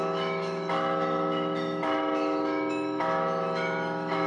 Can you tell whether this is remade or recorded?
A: remade